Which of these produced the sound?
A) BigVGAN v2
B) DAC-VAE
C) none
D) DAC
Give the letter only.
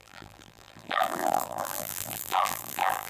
A